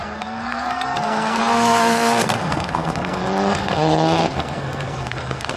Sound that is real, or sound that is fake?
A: fake